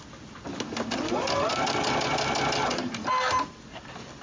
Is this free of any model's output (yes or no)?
yes